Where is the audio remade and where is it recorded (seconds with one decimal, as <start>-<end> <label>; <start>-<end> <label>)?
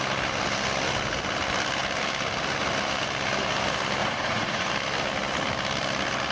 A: 0.0-4.0 recorded; 4.0-4.7 remade; 4.7-6.3 recorded